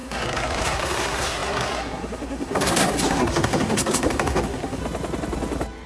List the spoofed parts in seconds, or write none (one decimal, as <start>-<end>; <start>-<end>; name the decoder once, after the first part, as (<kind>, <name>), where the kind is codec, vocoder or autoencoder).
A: 0.0-4.8 (codec, SNAC)